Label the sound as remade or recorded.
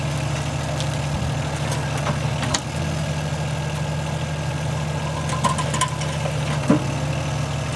recorded